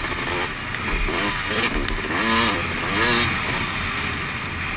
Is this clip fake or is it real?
real